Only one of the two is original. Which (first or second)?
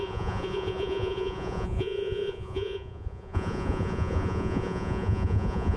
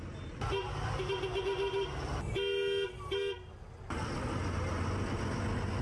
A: second